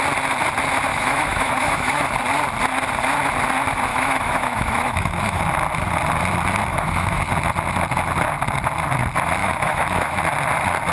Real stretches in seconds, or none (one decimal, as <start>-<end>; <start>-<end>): 0.0-0.9; 2.0-3.9; 5.4-6.7; 7.2-9.4; 10.2-10.9